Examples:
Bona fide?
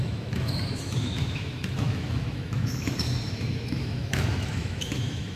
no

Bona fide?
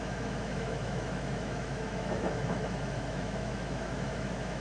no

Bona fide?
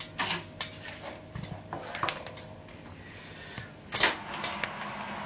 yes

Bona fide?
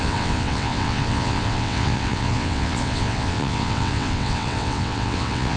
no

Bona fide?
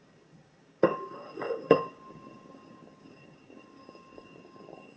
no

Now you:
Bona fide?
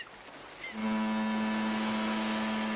yes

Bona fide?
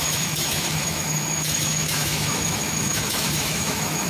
no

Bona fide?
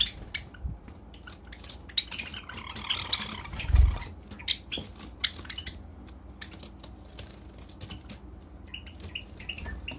yes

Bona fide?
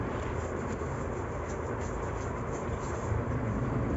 yes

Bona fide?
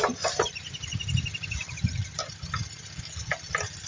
yes